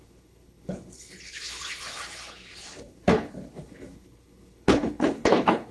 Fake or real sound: fake